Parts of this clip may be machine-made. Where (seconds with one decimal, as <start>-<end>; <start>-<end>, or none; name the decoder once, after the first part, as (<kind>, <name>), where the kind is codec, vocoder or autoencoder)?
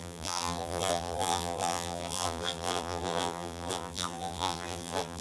0.0-5.2 (vocoder, BigVGAN v2)